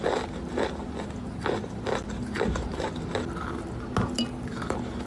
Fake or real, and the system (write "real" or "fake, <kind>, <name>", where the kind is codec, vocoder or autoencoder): real